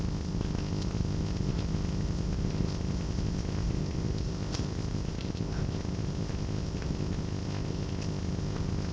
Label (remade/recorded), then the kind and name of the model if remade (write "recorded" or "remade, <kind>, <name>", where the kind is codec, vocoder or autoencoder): remade, codec, ZipCodec